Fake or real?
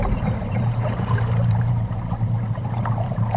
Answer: fake